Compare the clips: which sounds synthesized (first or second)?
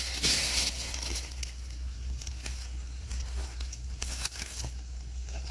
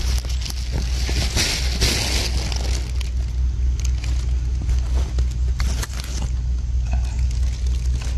first